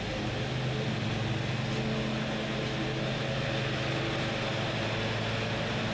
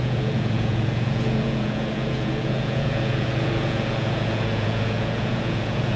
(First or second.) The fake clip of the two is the second